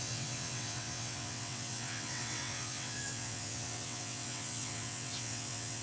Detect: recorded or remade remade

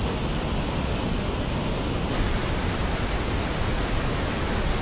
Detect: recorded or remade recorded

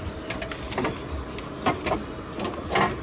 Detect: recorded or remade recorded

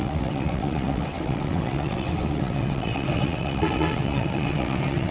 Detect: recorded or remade remade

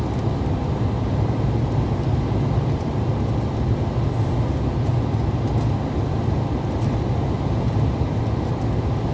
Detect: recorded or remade recorded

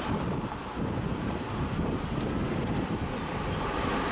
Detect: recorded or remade recorded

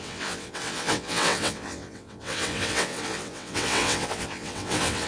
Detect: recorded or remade remade